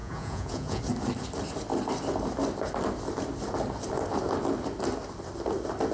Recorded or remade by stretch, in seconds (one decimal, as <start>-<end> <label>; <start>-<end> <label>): 0.0-0.8 remade; 0.8-5.9 recorded